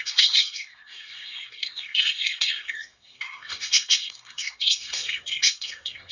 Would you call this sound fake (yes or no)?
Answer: yes